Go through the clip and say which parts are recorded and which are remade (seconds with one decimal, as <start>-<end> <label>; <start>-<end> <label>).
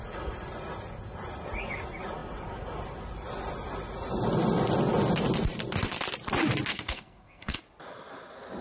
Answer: 0.0-6.7 recorded; 6.7-7.6 remade; 7.6-8.6 recorded